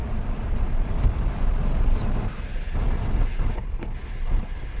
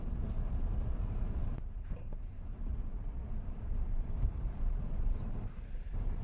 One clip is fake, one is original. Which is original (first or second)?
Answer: first